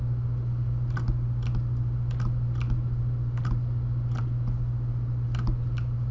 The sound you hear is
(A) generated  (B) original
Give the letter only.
B